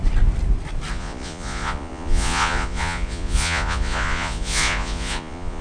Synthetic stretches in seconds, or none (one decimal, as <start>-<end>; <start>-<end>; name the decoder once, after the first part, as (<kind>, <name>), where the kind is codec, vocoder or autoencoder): 0.9-5.6 (vocoder, Vocos)